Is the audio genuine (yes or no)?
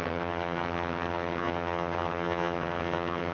no